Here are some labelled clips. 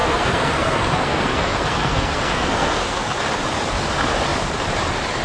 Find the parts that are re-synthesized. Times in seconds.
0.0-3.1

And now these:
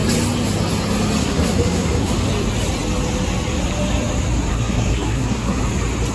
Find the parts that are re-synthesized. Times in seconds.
1.2-2.1; 4.5-5.6